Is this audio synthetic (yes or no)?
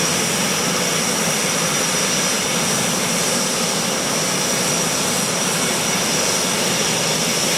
no